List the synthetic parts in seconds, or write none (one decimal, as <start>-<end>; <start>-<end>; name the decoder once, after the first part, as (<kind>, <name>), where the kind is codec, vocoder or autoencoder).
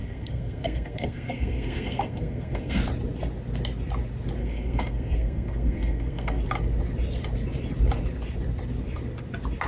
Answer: 0.0-2.8 (codec, SNAC); 4.4-6.4